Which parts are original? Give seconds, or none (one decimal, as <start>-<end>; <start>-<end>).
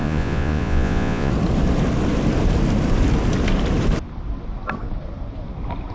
1.3-5.9